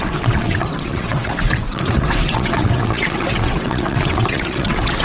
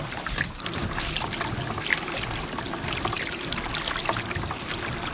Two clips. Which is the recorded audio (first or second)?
second